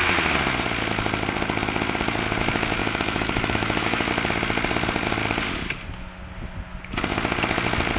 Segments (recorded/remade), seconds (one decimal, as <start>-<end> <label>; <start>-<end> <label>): 0.0-2.8 recorded; 2.8-4.1 remade; 4.1-8.0 recorded